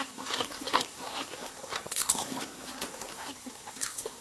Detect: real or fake fake